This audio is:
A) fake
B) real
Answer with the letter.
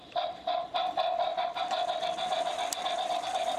A